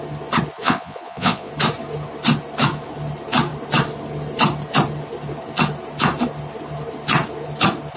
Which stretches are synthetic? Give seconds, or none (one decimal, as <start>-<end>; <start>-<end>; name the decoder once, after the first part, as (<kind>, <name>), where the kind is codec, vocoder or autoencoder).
0.6-1.5 (vocoder, Vocos)